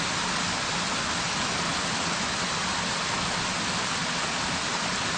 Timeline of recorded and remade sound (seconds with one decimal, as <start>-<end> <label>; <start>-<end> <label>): 0.0-5.2 recorded